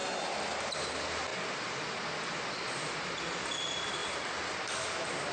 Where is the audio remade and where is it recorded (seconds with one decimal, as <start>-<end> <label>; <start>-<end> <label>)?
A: 0.0-5.3 recorded